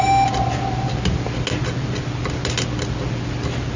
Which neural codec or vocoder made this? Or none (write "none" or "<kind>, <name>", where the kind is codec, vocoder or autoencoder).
none